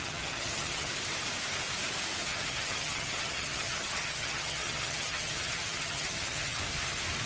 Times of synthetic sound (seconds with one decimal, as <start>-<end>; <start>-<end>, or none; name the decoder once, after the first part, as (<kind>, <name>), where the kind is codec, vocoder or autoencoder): 0.0-0.9 (vocoder, HiFi-GAN); 2.2-6.6